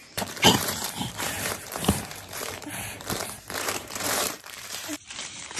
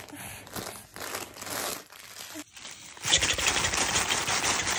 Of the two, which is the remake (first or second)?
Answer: first